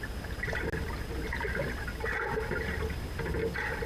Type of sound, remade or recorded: recorded